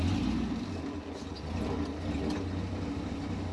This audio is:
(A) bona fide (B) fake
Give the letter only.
A